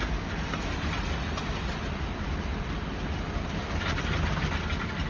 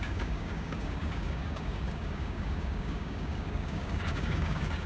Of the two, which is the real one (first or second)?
first